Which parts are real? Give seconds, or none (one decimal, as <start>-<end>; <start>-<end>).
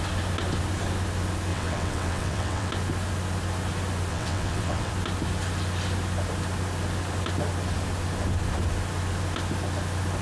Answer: 0.0-1.5; 2.7-4.1; 4.9-10.2